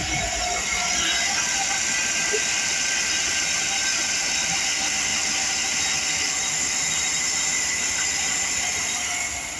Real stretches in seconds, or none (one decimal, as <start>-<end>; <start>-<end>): 0.0-9.6